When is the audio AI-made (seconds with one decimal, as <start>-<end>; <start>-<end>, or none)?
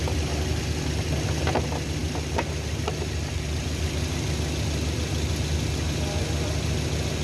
none